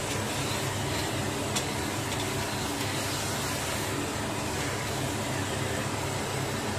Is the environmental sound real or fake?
real